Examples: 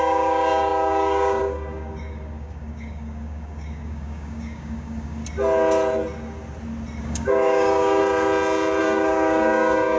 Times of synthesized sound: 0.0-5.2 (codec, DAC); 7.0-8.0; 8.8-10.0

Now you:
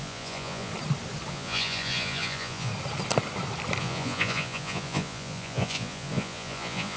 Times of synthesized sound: 0.0-0.7 (vocoder, Vocos); 1.3-2.7; 3.8-7.0

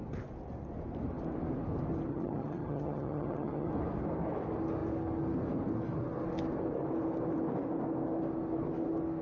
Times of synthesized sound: 2.1-3.7 (vocoder, HiFi-GAN)

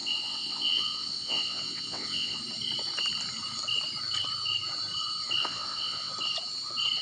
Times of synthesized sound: 0.0-2.4 (vocoder, WaveNeXt); 5.4-6.1

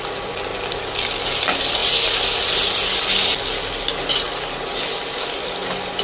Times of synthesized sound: none

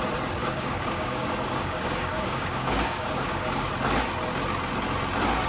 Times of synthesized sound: 0.4-3.7 (codec, DAC)